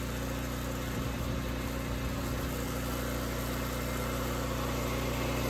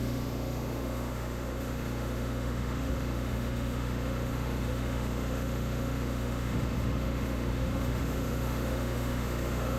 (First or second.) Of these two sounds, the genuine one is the first